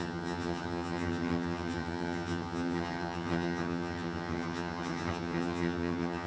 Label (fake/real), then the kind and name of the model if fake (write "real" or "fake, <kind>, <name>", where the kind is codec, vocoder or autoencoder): fake, vocoder, HiFi-GAN